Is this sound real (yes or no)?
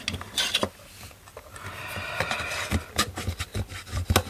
yes